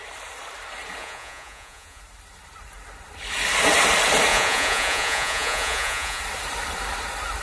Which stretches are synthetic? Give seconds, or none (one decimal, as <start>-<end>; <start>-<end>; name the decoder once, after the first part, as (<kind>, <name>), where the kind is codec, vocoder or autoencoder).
1.0-2.0 (vocoder, Vocos); 4.3-6.2